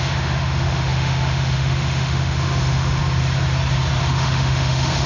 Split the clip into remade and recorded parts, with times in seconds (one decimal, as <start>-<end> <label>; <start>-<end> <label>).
0.0-3.0 remade; 3.0-4.0 recorded; 4.0-5.1 remade